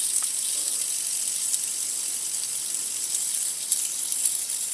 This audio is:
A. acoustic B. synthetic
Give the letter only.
A